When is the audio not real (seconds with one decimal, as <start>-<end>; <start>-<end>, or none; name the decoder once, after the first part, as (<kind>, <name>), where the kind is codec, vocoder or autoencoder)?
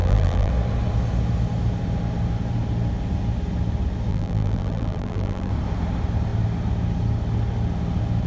0.0-0.5 (vocoder, BigVGAN v2); 4.1-5.5